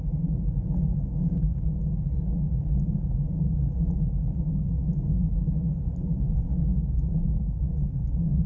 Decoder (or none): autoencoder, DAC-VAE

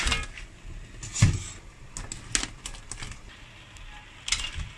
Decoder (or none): none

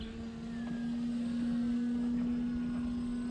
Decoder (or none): none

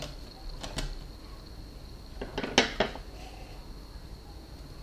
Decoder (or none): none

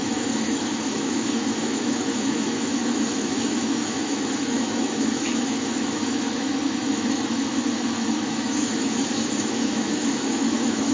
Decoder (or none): autoencoder, DAC-VAE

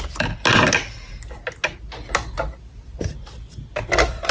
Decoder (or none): none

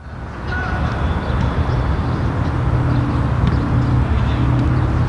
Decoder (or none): none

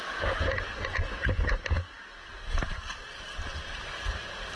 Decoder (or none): none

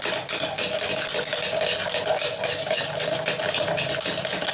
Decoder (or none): none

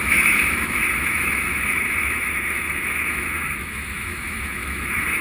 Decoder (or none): autoencoder, DAC-VAE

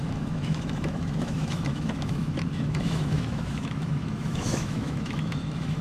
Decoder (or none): autoencoder, DAC-VAE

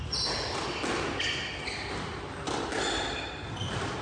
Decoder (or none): none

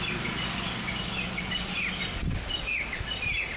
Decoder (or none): none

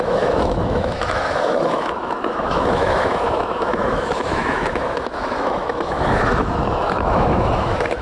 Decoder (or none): autoencoder, DAC-VAE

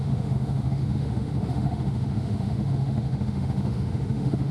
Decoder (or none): autoencoder, DAC-VAE